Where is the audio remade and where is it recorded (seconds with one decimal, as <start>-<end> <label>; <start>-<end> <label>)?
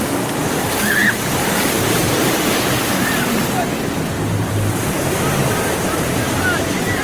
0.0-1.0 recorded; 1.0-5.0 remade; 5.0-5.4 recorded; 5.4-6.3 remade; 6.3-7.0 recorded